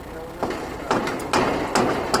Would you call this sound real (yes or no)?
yes